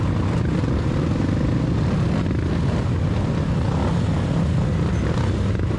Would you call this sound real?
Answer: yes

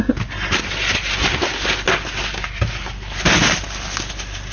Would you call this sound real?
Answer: yes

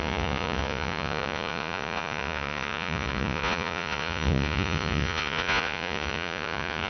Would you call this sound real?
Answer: no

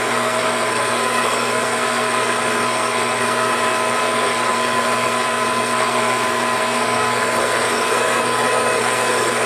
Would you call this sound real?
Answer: no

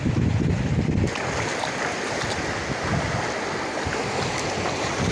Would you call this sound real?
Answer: yes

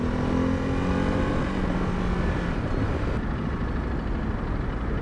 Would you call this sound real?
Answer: yes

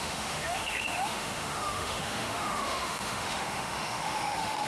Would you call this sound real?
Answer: no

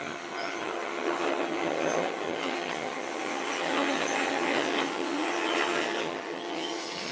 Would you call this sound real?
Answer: no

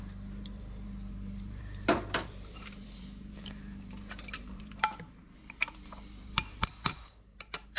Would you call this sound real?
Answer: no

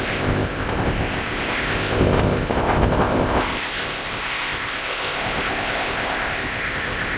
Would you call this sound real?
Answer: no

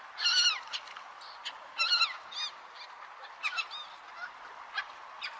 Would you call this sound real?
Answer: yes